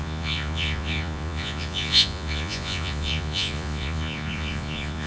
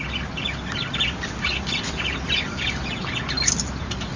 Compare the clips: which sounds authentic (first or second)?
second